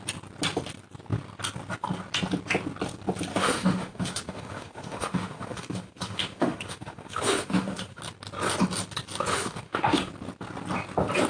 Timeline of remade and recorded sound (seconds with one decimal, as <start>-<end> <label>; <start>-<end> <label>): 0.0-3.3 recorded; 3.3-8.0 remade; 8.0-9.3 recorded; 9.3-10.1 remade; 10.1-11.3 recorded